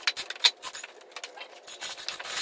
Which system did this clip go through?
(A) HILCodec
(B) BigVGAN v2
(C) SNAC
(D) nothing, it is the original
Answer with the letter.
D